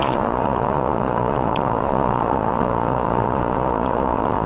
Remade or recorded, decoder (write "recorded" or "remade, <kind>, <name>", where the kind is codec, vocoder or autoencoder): remade, vocoder, Vocos